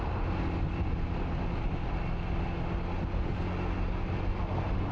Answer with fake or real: real